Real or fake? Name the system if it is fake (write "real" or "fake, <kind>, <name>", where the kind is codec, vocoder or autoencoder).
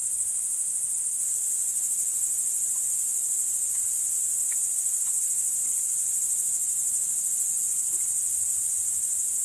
real